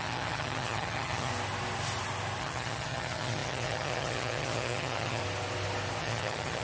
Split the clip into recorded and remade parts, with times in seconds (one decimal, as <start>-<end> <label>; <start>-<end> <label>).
0.0-1.3 remade; 1.3-2.4 recorded; 2.4-5.2 remade; 5.2-6.0 recorded; 6.0-6.6 remade